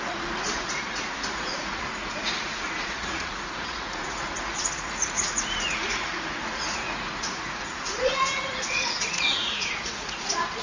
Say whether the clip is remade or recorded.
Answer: remade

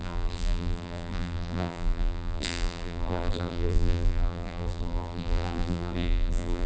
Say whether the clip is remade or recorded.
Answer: remade